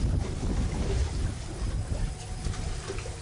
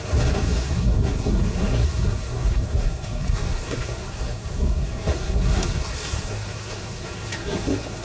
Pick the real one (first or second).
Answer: first